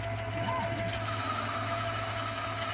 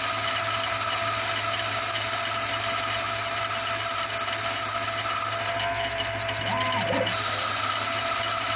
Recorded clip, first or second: second